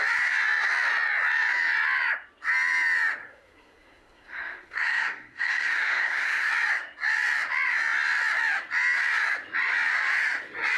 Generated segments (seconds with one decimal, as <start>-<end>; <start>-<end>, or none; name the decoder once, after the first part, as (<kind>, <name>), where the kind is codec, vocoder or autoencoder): 3.2-6.5 (codec, SNAC)